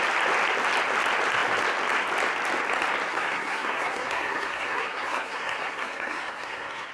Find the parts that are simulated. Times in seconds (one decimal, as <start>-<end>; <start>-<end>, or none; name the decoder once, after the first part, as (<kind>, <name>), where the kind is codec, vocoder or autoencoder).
3.1-6.9 (codec, SNAC)